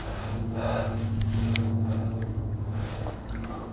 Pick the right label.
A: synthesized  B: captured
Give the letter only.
A